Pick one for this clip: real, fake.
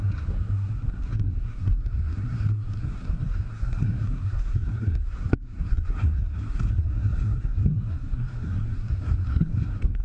fake